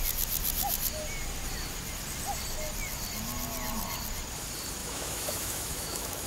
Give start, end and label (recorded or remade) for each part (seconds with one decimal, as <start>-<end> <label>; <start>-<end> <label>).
0.0-4.8 recorded; 4.8-6.3 remade